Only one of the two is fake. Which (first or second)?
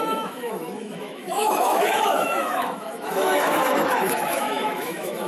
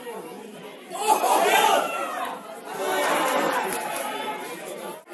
first